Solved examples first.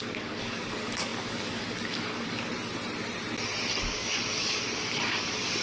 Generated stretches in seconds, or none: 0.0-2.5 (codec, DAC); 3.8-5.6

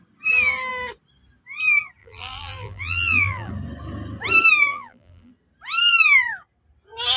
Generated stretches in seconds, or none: 2.0-3.5 (vocoder, BigVGAN v2); 4.7-5.3

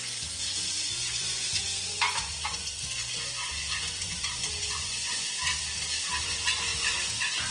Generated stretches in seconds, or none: 0.0-5.5 (vocoder, Vocos); 6.2-7.5

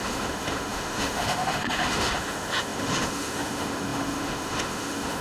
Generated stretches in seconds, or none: 0.0-5.2 (autoencoder, DAC-VAE)

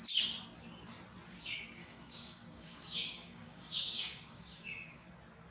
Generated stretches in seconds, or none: 1.8-5.1 (codec, DAC)

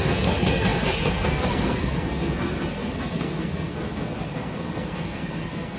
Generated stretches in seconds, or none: 0.0-5.8 (codec, SNAC)

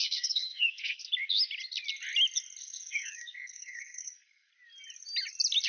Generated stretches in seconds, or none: 0.0-1.0 (codec, SNAC); 2.6-4.5